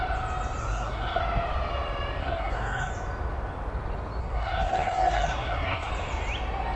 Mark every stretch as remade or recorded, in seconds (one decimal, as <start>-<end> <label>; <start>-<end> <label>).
0.0-0.6 recorded; 0.6-1.2 remade; 1.2-2.2 recorded; 2.2-2.9 remade; 2.9-4.2 recorded; 4.2-5.9 remade; 5.9-6.8 recorded